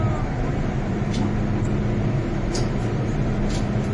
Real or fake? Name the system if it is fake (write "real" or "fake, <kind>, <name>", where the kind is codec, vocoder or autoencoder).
real